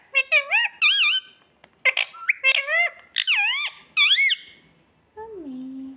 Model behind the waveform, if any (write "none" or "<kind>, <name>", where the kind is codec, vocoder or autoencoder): none